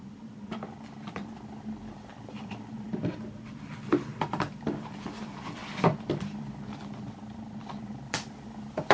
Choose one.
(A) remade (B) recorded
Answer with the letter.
A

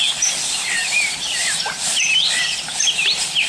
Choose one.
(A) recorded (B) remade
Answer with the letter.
B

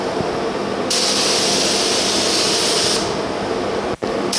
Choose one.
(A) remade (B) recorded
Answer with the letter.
B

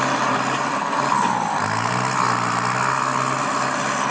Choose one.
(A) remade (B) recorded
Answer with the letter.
B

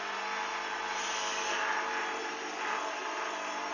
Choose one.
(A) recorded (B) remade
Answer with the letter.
A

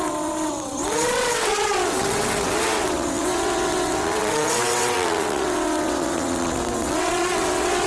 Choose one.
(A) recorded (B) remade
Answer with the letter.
B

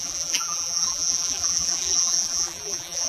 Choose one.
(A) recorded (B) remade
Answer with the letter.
B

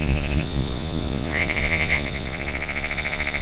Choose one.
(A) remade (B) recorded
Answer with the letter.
A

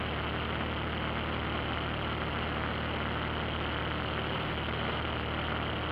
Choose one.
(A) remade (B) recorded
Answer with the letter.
B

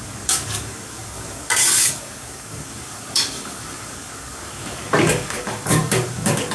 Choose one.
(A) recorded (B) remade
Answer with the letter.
B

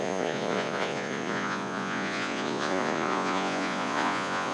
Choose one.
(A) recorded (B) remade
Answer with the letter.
B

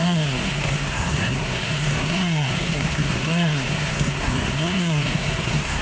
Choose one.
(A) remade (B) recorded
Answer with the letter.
A